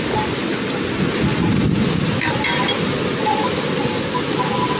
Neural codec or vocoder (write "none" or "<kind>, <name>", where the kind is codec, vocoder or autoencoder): none